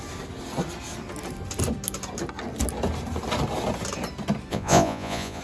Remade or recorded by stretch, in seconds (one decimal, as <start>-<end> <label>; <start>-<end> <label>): 0.0-4.5 recorded; 4.5-5.4 remade